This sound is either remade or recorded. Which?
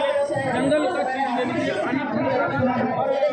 recorded